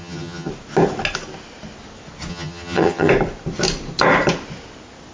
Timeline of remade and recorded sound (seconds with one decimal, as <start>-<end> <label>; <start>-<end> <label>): 0.0-0.5 remade; 0.5-2.3 recorded; 2.3-3.1 remade; 3.1-5.1 recorded